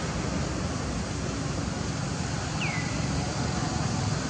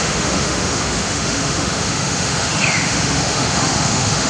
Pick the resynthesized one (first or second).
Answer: second